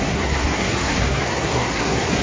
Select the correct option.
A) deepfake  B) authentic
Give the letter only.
A